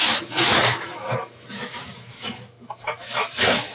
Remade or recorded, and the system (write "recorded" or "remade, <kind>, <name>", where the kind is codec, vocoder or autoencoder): remade, autoencoder, DAC-VAE